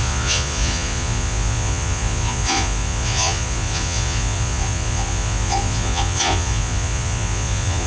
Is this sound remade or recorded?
remade